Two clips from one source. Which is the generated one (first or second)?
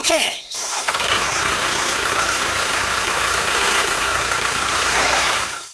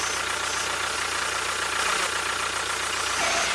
first